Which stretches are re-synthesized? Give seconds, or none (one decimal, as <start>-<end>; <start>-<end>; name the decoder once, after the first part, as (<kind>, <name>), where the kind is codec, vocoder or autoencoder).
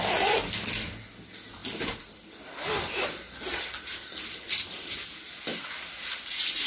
none